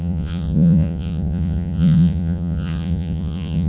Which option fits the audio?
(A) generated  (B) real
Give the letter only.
A